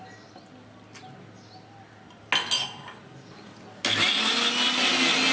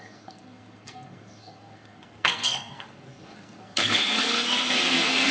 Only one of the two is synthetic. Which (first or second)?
second